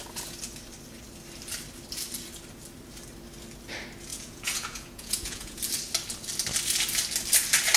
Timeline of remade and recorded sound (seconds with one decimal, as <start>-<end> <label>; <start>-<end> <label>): 0.0-4.1 recorded; 4.1-5.6 remade; 5.6-7.8 recorded